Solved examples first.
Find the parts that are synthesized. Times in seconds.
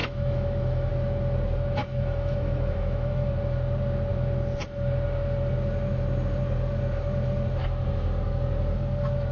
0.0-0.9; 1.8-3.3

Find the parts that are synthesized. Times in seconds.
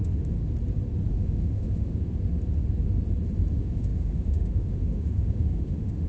0.0-0.4; 1.1-2.1; 3.5-6.1